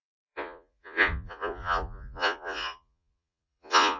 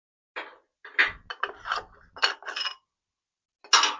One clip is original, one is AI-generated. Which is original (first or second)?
second